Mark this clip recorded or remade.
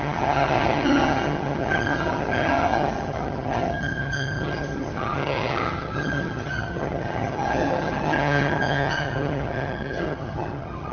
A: remade